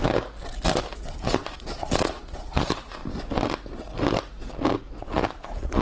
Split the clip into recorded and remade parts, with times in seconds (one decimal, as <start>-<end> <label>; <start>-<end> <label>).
0.0-1.0 recorded; 1.0-3.0 remade; 3.0-5.0 recorded; 5.0-5.8 remade